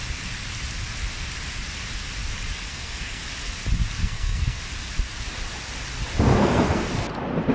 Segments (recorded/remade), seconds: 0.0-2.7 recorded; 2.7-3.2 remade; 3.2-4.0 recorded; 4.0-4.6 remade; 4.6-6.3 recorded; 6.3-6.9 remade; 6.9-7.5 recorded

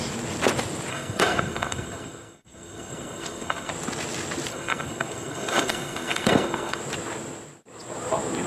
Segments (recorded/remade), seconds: 0.0-0.9 recorded; 0.9-3.7 remade; 3.7-4.5 recorded; 4.5-6.8 remade; 6.8-8.5 recorded

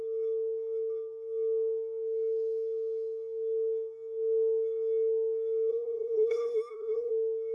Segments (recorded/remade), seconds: 0.0-5.7 recorded; 5.7-7.1 remade; 7.1-7.5 recorded

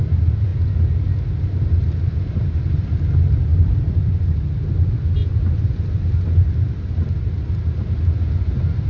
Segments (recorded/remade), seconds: 0.0-3.5 recorded; 3.5-4.2 remade; 4.2-5.2 recorded; 5.2-7.7 remade; 7.7-8.9 recorded

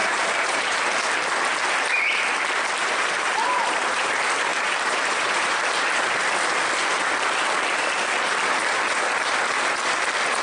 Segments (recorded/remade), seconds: 0.0-0.8 remade; 0.8-2.8 recorded; 2.8-4.1 remade; 4.1-4.5 recorded; 4.5-5.7 remade; 5.7-10.4 recorded

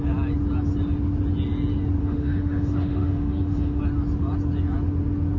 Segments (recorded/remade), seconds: 0.0-2.0 recorded; 2.0-3.8 remade; 3.8-5.4 recorded